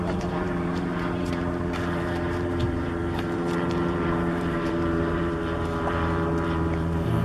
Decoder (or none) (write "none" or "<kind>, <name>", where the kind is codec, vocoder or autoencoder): vocoder, BigVGAN v2